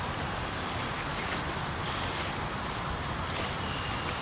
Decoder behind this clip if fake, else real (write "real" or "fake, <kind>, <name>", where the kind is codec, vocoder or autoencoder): fake, vocoder, BigVGAN v2